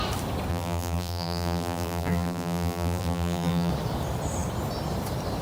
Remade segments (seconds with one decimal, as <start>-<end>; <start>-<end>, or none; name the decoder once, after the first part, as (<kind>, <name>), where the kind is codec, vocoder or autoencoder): 0.5-3.7 (vocoder, BigVGAN v2)

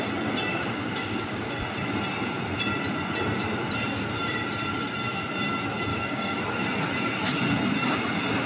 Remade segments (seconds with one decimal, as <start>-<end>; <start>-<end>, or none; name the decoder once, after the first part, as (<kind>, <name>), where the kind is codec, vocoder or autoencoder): 0.5-1.5 (codec, DAC); 5.9-6.4

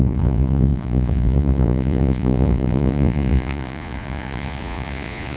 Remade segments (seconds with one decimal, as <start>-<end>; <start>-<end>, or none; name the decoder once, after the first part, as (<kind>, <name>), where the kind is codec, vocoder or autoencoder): 0.0-5.4 (vocoder, Vocos)